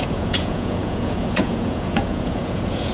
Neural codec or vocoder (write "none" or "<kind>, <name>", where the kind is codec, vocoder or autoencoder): vocoder, Vocos